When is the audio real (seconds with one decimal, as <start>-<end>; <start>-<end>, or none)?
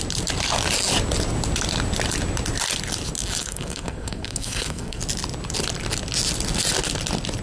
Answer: 0.0-3.4; 5.0-7.4